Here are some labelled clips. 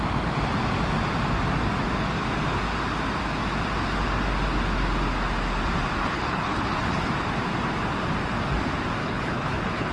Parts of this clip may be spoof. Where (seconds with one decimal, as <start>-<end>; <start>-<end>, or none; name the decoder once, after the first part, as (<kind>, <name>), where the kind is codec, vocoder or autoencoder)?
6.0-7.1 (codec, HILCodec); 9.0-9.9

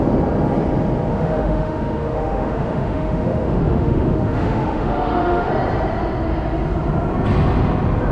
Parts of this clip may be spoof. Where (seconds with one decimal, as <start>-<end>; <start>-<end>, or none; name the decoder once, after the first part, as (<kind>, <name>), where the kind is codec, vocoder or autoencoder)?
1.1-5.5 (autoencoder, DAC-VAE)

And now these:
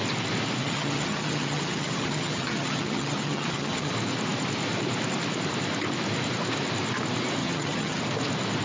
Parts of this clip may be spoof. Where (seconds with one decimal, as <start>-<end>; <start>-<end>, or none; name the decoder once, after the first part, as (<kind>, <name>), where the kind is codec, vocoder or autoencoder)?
0.6-3.9 (vocoder, HiFi-GAN); 7.4-8.0

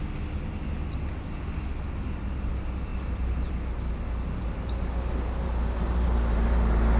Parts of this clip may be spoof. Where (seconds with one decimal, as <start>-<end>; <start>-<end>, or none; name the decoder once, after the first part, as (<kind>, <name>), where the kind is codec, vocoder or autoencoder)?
none

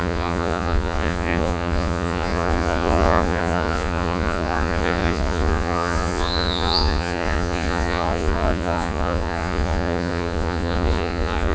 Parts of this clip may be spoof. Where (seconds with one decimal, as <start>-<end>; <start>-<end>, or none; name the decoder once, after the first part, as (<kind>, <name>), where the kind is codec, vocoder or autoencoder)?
0.0-11.5 (vocoder, Vocos)